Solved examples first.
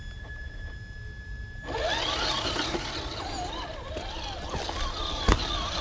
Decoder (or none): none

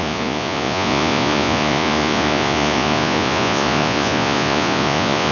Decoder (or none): vocoder, Vocos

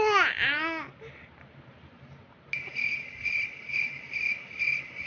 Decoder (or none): none